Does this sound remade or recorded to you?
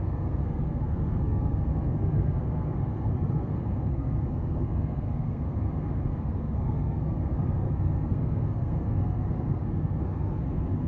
remade